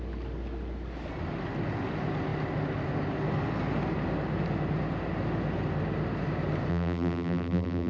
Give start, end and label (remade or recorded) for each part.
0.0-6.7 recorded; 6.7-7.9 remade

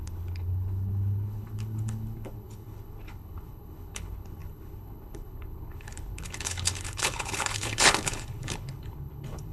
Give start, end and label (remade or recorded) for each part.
0.0-9.5 remade

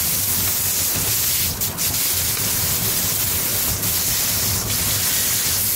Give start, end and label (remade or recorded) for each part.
0.0-5.8 recorded

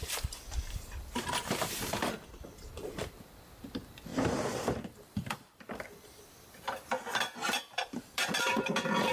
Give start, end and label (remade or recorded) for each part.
0.0-9.1 remade

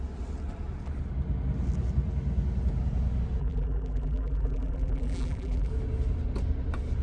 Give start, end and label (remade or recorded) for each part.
0.0-3.4 recorded; 3.4-5.7 remade; 5.7-7.0 recorded